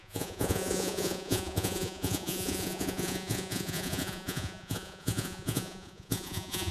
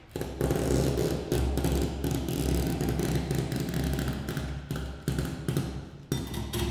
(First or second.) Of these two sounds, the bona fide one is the second